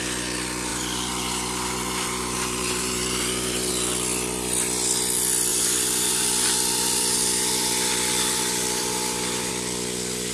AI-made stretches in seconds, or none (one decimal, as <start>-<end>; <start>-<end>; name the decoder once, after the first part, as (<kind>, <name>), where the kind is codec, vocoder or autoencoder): 0.7-3.7 (vocoder, BigVGAN v2); 5.5-9.5